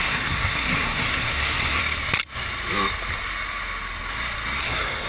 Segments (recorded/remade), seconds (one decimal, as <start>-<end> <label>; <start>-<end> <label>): 0.0-1.8 remade; 1.8-4.6 recorded; 4.6-5.1 remade